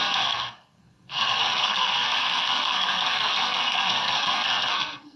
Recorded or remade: remade